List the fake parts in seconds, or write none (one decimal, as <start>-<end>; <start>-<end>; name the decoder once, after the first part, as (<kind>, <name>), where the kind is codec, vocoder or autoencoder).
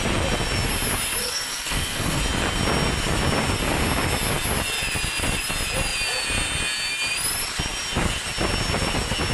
1.2-2.2 (codec, SNAC)